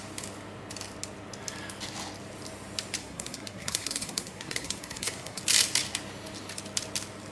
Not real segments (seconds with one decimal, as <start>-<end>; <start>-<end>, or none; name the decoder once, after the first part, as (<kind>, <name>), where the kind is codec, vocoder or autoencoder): 3.0-5.4 (codec, SNAC)